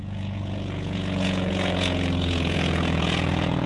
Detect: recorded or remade remade